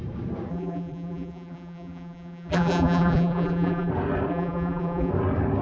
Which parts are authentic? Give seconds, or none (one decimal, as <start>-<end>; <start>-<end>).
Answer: 0.0-0.5; 3.9-4.3; 5.1-5.6